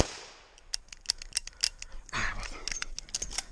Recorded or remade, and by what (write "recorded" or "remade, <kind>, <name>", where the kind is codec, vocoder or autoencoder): recorded